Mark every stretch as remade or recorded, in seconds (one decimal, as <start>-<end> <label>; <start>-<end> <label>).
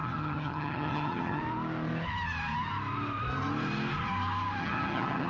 0.0-1.4 remade; 1.4-4.6 recorded; 4.6-5.3 remade